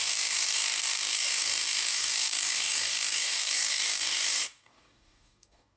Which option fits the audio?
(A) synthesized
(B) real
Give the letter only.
A